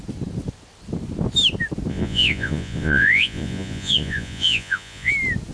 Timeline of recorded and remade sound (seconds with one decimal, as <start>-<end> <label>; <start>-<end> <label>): 0.0-1.9 recorded; 1.9-5.1 remade; 5.1-5.5 recorded